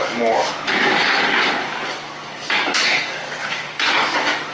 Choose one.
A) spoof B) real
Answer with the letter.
A